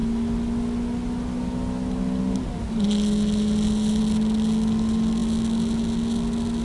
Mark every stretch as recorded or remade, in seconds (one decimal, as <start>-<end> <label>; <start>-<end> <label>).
0.0-6.6 recorded